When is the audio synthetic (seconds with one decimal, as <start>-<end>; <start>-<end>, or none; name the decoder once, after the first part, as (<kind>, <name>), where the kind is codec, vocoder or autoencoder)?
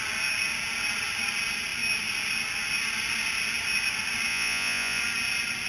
4.3-5.0 (vocoder, Vocos)